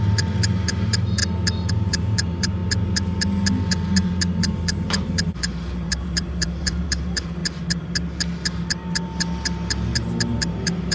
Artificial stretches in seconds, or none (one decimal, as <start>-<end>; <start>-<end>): 0.0-1.2; 1.7-2.6; 4.4-7.4; 10.4-10.9